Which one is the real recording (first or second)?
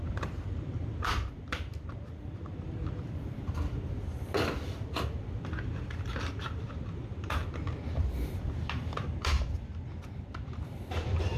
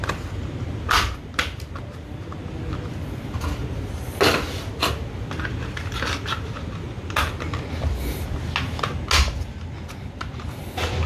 second